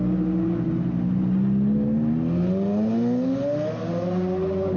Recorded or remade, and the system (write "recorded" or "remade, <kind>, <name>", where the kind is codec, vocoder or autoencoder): recorded